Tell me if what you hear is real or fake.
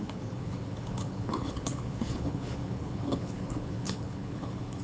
fake